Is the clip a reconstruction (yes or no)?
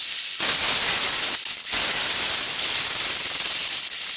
no